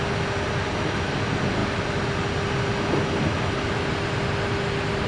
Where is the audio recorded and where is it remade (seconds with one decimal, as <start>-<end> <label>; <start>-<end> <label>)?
0.0-5.1 recorded